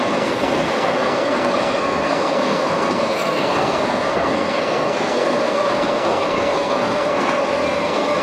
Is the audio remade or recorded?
remade